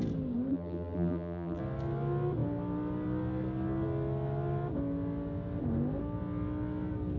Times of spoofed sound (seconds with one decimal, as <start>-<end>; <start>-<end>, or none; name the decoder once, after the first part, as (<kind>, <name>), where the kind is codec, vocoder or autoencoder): 0.5-1.6 (vocoder, BigVGAN v2)